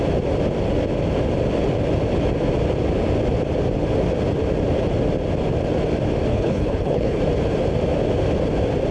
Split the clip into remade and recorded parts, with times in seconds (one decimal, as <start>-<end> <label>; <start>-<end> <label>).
0.0-6.3 recorded; 6.3-7.2 remade; 7.2-8.9 recorded